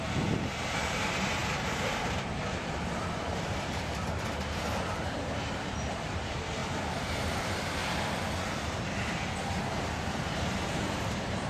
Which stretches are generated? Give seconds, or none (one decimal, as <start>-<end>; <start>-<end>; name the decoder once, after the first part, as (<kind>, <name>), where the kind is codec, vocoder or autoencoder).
0.0-6.6 (vocoder, BigVGAN v2); 7.2-7.8; 10.3-11.5